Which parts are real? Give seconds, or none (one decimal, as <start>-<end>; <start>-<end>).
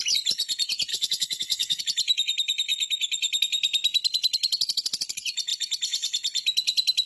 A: 0.0-0.9; 1.8-7.1